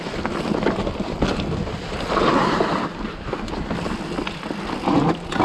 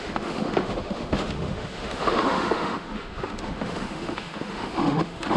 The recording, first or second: first